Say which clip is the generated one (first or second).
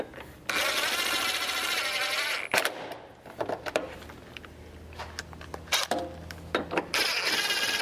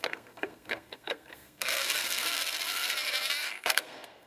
second